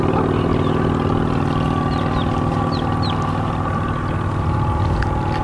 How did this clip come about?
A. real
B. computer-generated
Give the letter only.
A